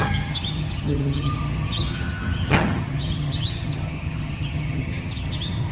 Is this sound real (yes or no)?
no